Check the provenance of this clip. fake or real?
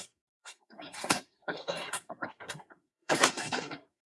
fake